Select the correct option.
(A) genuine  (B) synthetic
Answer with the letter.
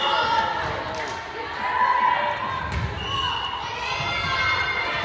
A